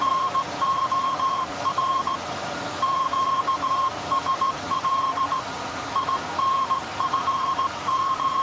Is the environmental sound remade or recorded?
remade